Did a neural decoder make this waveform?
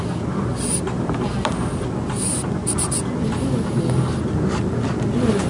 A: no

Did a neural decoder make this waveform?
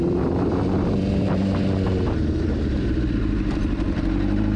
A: yes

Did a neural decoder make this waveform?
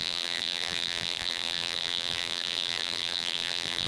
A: yes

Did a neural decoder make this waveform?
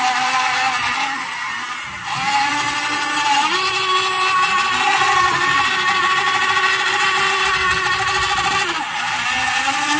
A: no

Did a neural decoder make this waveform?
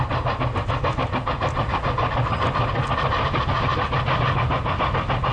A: no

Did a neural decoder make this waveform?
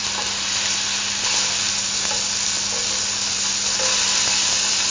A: no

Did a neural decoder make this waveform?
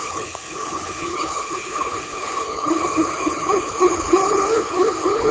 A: yes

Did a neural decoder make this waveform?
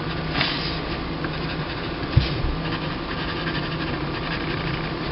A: no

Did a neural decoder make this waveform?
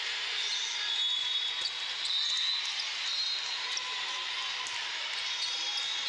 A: no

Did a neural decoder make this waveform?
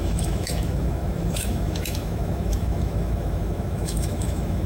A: yes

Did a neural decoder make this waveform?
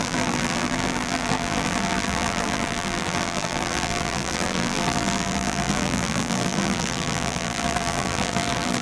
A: yes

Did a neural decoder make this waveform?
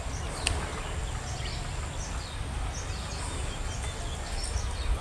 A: no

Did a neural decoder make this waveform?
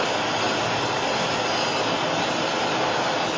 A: no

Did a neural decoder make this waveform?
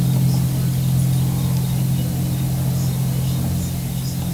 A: no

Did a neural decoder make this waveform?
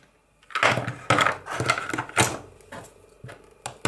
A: no